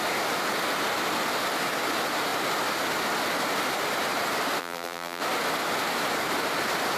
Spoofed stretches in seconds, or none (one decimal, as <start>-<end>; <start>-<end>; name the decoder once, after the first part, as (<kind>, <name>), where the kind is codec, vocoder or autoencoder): 4.6-5.2 (vocoder, BigVGAN v2)